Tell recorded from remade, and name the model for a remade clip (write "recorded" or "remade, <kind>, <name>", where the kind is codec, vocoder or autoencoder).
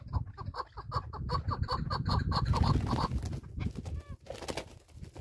recorded